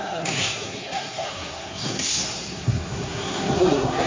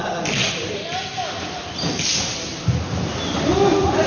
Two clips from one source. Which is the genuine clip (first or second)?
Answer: second